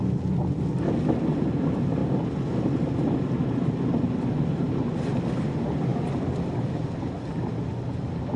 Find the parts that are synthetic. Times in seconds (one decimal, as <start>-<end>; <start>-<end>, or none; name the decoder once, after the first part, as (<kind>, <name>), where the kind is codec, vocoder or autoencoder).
none